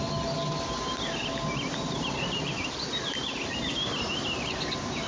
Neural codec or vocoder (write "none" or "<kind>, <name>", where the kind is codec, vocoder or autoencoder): none